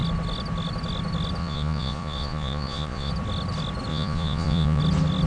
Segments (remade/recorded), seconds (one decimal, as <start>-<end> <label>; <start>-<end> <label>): 0.0-1.4 recorded; 1.4-3.1 remade; 3.1-3.9 recorded; 3.9-4.8 remade; 4.8-5.3 recorded